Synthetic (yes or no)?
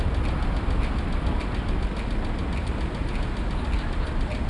no